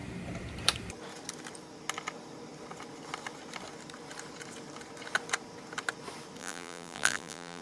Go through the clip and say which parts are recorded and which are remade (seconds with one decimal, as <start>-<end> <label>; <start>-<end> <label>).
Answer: 0.0-6.4 recorded; 6.4-7.6 remade